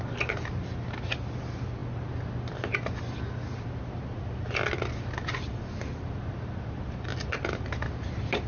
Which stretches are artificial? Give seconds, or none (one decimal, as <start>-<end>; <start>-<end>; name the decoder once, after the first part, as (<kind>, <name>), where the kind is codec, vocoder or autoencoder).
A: none